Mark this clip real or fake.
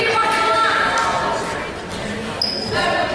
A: real